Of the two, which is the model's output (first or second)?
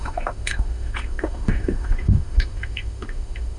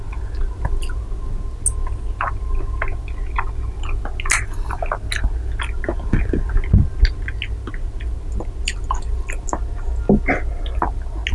first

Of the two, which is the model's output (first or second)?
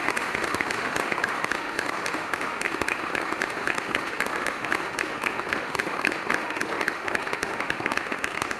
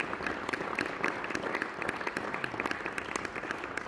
first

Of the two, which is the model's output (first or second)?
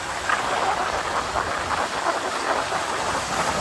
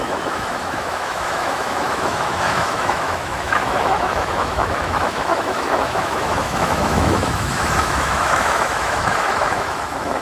second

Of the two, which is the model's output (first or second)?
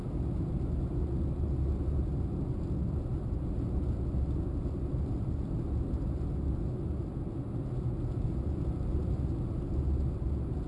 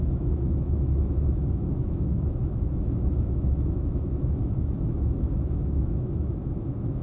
second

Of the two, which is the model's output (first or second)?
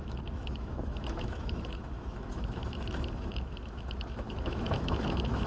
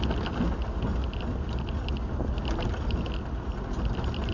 first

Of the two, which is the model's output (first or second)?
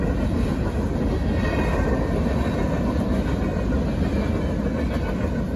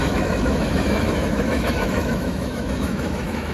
second